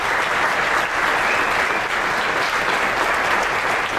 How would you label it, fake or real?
real